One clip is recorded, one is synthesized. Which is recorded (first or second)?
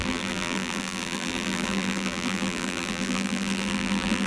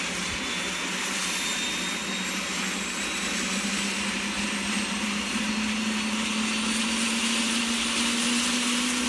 second